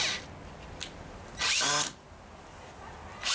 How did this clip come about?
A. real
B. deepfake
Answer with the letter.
A